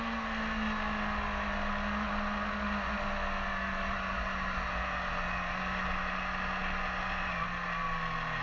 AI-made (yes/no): no